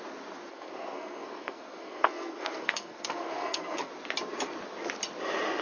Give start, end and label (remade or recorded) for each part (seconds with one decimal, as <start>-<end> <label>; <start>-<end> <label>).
0.0-0.5 recorded; 0.5-3.9 remade; 3.9-5.6 recorded